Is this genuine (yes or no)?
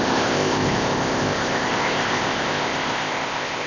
no